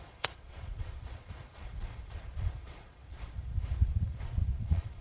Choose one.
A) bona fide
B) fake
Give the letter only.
B